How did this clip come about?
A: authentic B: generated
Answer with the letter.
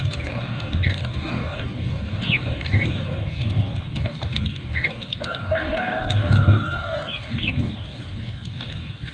B